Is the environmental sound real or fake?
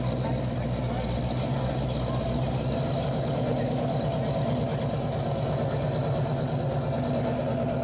real